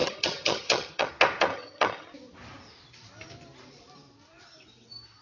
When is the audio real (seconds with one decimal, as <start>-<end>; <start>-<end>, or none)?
1.1-1.5; 2.1-5.2